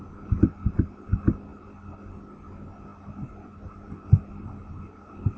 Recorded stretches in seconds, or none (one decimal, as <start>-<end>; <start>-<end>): 0.0-5.4